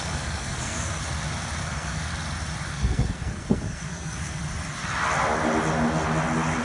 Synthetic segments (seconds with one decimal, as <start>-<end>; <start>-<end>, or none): 0.0-1.0; 1.6-2.1; 2.7-4.4